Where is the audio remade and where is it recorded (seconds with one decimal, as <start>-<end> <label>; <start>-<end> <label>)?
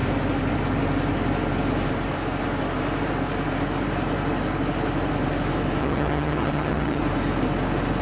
0.0-5.8 recorded; 5.8-7.0 remade; 7.0-8.0 recorded